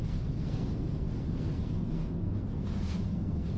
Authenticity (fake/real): fake